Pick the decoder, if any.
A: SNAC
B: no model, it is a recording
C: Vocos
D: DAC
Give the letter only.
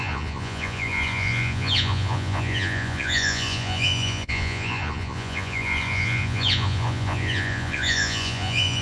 C